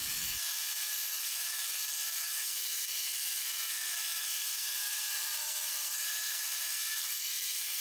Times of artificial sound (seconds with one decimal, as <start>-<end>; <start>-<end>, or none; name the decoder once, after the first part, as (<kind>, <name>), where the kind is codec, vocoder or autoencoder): 0.0-7.8 (codec, SNAC)